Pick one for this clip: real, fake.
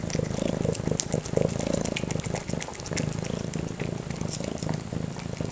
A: real